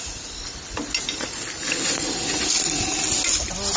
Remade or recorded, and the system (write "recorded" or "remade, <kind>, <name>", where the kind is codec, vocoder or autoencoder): recorded